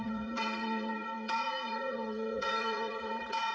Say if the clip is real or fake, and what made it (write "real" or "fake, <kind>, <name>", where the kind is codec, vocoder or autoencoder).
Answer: fake, vocoder, Vocos